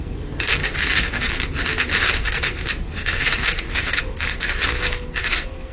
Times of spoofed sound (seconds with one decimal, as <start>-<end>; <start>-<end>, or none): 0.0-5.7